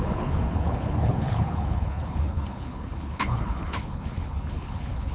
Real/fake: fake